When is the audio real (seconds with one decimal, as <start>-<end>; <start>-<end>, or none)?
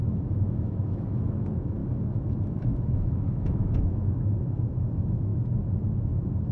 5.3-6.0